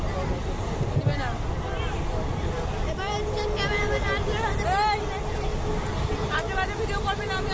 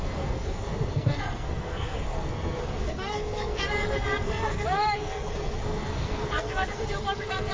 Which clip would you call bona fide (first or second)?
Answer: first